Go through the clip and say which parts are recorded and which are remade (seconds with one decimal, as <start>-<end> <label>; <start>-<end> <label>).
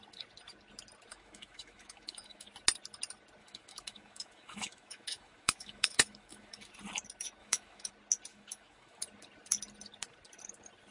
0.0-1.1 recorded; 1.1-2.5 remade; 2.5-3.4 recorded; 3.4-6.7 remade; 6.7-7.4 recorded; 7.4-7.9 remade; 7.9-8.3 recorded; 8.3-9.0 remade; 9.0-10.9 recorded